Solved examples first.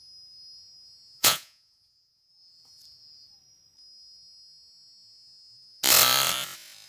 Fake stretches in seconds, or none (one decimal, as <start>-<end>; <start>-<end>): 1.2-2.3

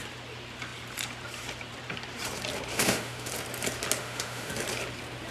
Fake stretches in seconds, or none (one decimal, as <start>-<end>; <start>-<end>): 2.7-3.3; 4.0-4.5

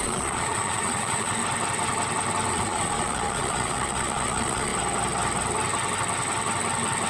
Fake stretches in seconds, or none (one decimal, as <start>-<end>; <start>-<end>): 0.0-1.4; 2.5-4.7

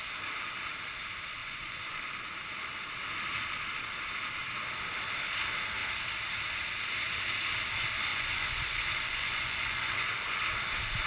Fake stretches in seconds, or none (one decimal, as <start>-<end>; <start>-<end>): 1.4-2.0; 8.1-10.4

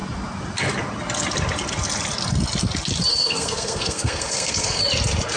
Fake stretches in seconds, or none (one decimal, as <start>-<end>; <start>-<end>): 3.1-4.8

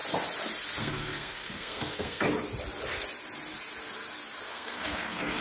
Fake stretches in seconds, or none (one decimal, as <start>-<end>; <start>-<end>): 0.8-2.3; 4.5-5.4